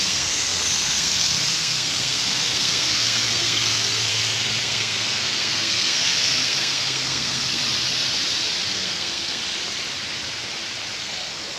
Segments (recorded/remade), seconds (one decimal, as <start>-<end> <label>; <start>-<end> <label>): 0.0-7.6 remade; 7.6-8.7 recorded; 8.7-9.4 remade; 9.4-11.0 recorded; 11.0-11.6 remade

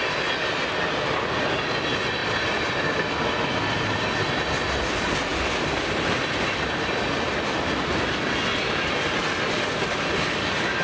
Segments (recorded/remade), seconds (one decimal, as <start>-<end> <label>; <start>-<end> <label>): 0.0-2.2 recorded; 2.2-2.7 remade; 2.7-10.8 recorded

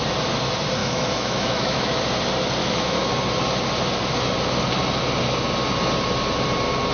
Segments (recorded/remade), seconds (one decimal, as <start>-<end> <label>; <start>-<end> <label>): 0.0-0.8 recorded; 0.8-2.0 remade; 2.0-2.6 recorded; 2.6-3.1 remade; 3.1-6.9 recorded

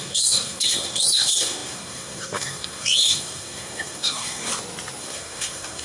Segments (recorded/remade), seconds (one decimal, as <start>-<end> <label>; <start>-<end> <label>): 0.0-4.5 remade; 4.5-5.0 recorded; 5.0-5.8 remade

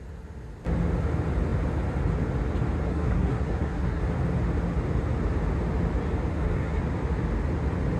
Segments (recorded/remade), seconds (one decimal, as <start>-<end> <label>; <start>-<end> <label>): 0.0-2.9 recorded; 2.9-4.0 remade; 4.0-6.3 recorded; 6.3-6.8 remade; 6.8-8.0 recorded

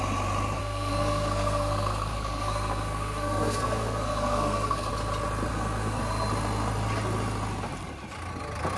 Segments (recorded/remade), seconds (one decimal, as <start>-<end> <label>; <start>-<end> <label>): 0.0-0.6 recorded; 0.6-4.9 remade; 4.9-5.5 recorded; 5.5-6.0 remade; 6.0-8.8 recorded

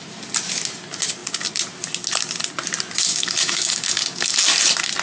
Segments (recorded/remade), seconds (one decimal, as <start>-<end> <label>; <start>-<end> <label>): 0.0-3.1 recorded; 3.1-4.4 remade; 4.4-5.0 recorded

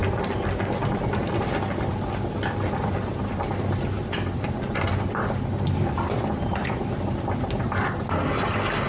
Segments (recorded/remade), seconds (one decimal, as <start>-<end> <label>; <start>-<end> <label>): 0.0-8.9 recorded